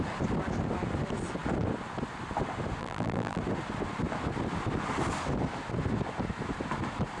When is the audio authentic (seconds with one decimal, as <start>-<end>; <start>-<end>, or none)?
0.0-2.8; 3.4-7.2